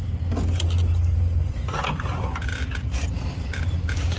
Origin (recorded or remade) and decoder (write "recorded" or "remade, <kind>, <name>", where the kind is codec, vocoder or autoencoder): recorded